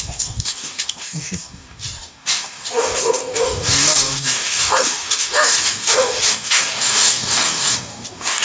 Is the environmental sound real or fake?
fake